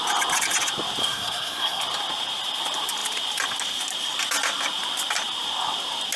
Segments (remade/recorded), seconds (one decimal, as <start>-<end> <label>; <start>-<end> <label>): 0.0-1.0 recorded; 1.0-1.8 remade; 1.8-6.2 recorded